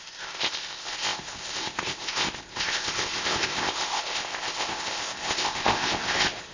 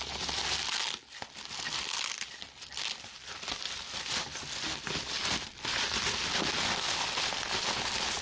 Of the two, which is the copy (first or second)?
first